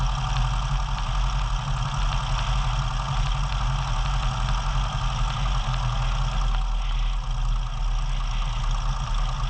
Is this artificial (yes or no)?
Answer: no